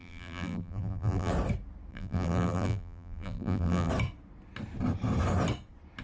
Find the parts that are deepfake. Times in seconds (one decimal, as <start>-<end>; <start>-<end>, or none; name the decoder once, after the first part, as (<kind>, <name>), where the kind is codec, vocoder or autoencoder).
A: 0.0-1.3 (vocoder, BigVGAN v2); 1.9-3.9